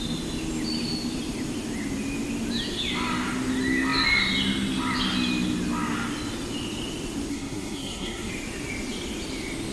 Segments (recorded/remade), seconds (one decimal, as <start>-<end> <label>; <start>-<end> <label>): 0.0-7.3 recorded; 7.3-8.3 remade; 8.3-9.7 recorded